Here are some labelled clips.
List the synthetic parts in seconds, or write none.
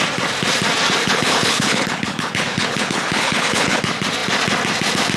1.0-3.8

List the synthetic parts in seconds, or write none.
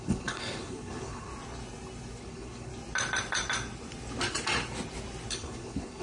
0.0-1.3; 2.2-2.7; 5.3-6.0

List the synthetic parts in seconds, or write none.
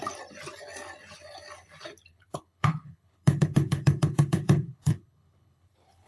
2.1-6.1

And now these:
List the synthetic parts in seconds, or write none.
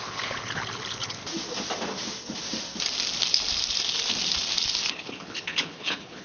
0.0-1.2; 4.9-6.2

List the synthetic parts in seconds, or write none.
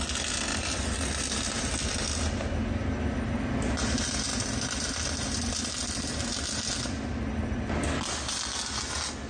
none